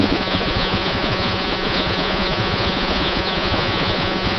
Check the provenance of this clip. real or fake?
fake